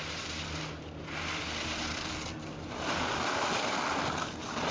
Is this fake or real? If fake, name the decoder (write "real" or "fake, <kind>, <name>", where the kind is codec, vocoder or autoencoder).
real